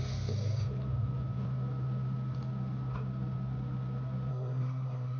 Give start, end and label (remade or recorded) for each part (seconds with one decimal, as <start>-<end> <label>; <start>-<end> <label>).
0.0-4.3 recorded; 4.3-5.2 remade